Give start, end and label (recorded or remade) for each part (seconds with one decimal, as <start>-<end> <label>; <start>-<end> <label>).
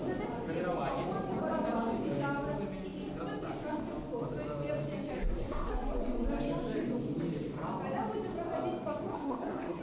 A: 0.0-5.2 recorded; 5.2-5.7 remade; 5.7-9.1 recorded; 9.1-9.8 remade